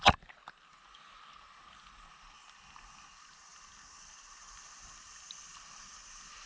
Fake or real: real